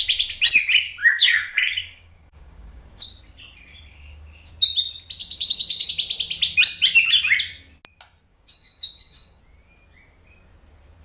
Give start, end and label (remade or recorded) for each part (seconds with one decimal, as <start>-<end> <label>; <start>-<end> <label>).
0.0-1.0 recorded; 1.0-3.1 remade; 3.1-3.9 recorded; 3.9-4.5 remade; 4.5-5.2 recorded; 5.2-5.9 remade; 5.9-8.3 recorded; 8.3-9.4 remade; 9.4-11.0 recorded